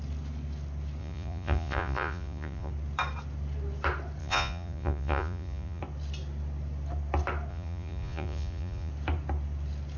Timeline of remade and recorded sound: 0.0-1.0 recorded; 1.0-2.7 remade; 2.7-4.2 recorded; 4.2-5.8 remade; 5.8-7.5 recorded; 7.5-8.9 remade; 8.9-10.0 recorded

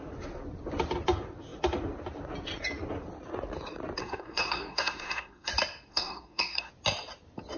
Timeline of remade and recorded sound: 0.0-4.0 recorded; 4.0-5.5 remade; 5.5-5.9 recorded; 5.9-6.7 remade; 6.7-7.6 recorded